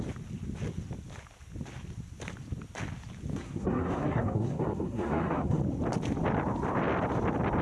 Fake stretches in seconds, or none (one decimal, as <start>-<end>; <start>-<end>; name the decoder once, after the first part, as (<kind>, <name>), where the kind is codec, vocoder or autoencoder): 3.3-5.6 (codec, SNAC)